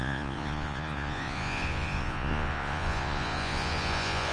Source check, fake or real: fake